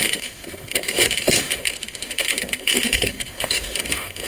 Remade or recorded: remade